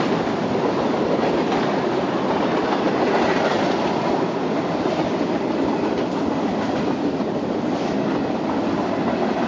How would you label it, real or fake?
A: real